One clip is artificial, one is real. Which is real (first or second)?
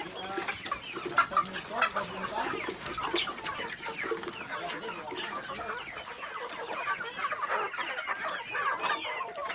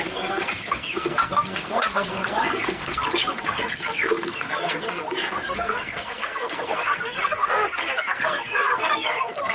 first